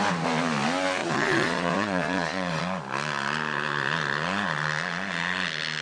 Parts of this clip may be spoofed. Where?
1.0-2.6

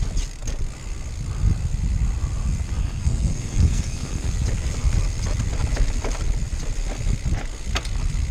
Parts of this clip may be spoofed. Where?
2.8-4.3

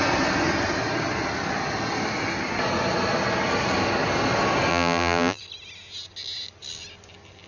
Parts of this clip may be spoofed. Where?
4.7-5.4

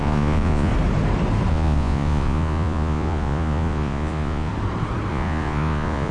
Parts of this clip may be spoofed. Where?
0.0-0.7; 1.5-4.5; 5.1-6.1

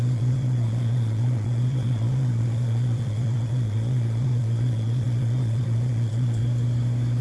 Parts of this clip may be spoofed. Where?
0.0-6.4

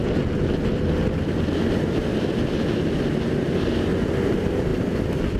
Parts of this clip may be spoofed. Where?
none